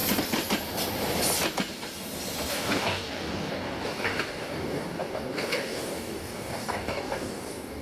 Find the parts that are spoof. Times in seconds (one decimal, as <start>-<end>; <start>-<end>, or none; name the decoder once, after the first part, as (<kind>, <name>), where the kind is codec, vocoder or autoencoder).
2.5-7.8 (codec, DAC)